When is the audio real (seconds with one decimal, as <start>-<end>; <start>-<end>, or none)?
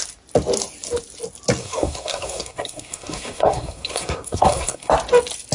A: 0.0-1.6; 4.9-5.5